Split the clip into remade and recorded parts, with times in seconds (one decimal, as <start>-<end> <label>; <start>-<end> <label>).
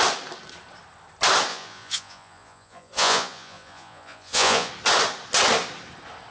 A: 0.0-1.5 recorded; 1.5-4.7 remade; 4.7-6.3 recorded